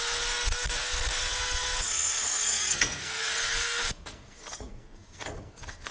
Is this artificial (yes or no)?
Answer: yes